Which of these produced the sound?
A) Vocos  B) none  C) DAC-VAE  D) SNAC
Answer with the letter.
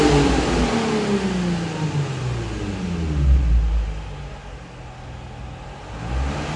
B